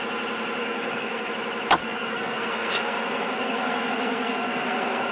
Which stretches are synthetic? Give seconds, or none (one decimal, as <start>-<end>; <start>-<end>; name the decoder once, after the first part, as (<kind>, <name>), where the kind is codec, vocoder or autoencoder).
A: 0.6-1.3 (codec, SNAC); 1.8-5.1